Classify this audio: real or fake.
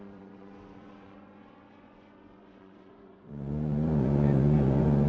fake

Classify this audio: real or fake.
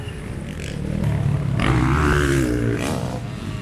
real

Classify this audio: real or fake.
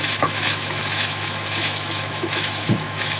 fake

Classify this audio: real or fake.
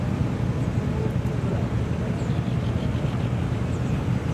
real